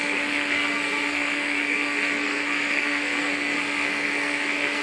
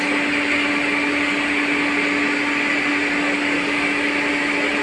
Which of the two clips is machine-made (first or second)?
first